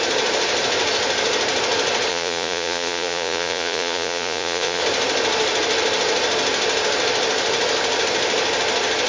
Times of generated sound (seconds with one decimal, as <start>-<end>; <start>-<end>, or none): 2.1-4.8